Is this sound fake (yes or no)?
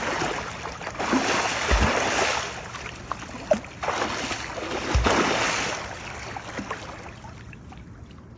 no